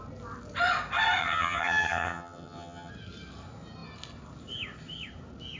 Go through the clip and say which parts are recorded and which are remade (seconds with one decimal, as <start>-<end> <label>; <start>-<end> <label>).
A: 0.0-1.2 recorded; 1.2-2.9 remade; 2.9-5.6 recorded